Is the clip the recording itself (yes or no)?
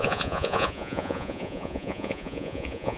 no